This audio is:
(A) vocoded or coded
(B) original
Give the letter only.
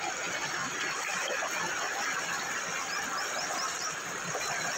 B